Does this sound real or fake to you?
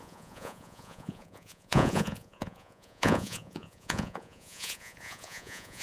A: fake